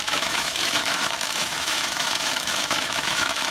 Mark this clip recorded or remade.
remade